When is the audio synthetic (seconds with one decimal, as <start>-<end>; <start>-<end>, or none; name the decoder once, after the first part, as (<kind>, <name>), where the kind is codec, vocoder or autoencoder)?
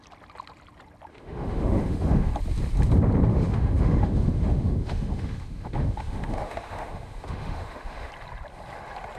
1.1-2.3 (autoencoder, DAC-VAE); 3.3-8.1